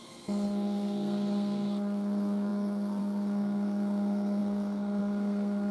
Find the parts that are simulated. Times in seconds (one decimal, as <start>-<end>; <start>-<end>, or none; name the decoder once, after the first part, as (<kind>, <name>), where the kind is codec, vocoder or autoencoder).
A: 0.0-5.7 (codec, SNAC)